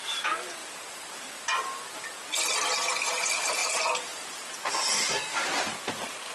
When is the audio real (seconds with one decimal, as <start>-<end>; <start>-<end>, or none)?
0.0-0.6; 1.3-3.6; 5.5-6.3